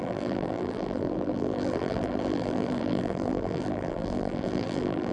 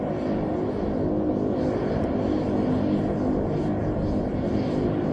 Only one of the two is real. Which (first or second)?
second